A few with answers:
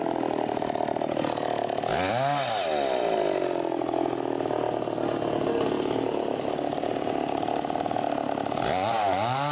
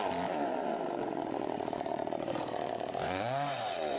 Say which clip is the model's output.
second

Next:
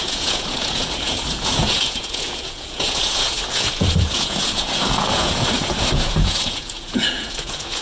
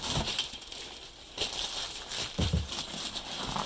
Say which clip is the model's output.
first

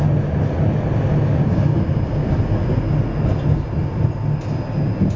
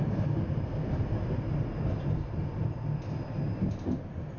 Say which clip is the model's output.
second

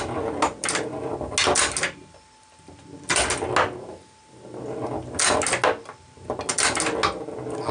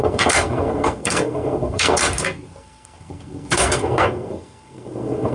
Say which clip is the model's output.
second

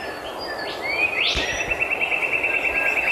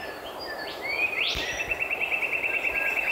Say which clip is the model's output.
second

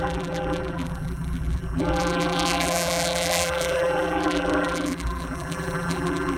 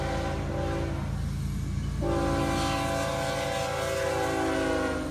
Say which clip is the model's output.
first